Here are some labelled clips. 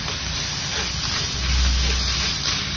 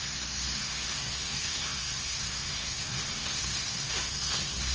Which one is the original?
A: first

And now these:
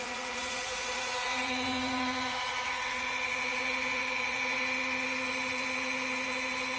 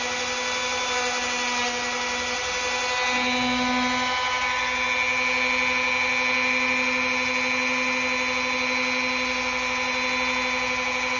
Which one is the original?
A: second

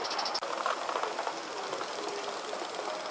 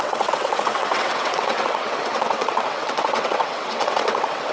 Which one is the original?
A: first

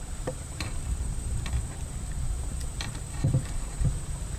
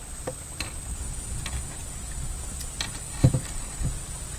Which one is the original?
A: second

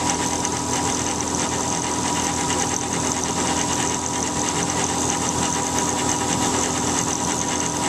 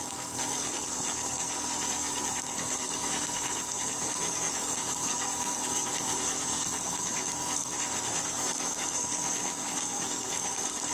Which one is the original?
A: first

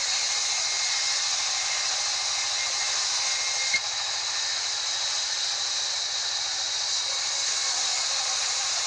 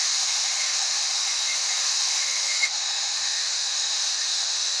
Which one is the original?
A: first